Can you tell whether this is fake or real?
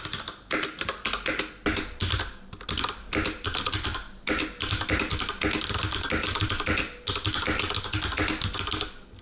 real